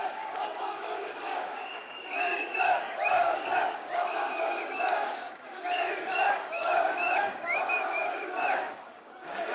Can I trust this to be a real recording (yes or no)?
no